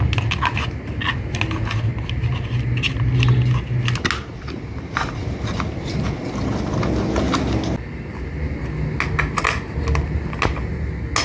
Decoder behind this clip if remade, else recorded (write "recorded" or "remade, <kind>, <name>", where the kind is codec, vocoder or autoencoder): recorded